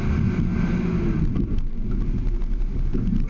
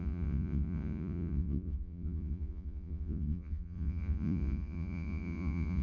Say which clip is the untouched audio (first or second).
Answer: first